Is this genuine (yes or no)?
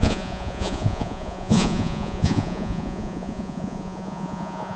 no